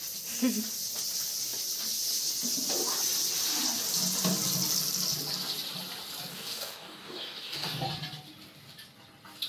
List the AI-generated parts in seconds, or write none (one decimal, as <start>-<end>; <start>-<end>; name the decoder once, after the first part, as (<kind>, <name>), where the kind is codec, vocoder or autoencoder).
6.3-7.8 (codec, DAC)